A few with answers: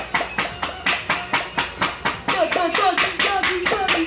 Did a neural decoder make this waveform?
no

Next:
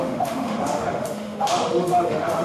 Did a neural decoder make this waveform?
yes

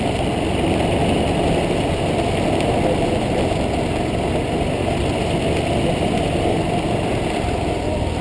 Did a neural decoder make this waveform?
no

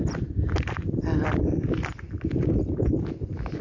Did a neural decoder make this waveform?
no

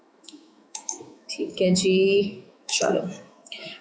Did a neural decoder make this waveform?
yes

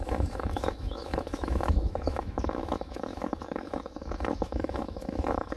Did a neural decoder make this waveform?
yes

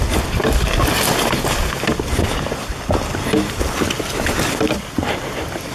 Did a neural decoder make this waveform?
no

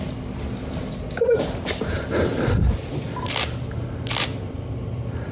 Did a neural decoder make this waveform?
no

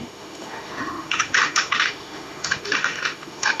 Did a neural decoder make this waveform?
yes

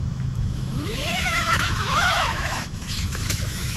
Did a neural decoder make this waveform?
yes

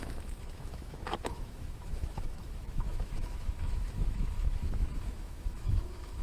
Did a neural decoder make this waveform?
yes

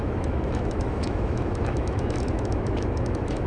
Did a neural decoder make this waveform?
yes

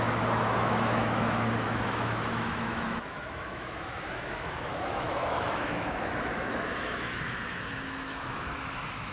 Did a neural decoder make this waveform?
yes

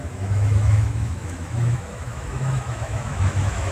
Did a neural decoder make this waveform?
yes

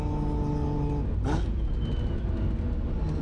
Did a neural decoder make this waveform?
no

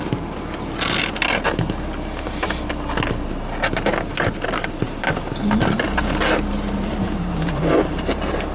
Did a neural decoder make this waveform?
no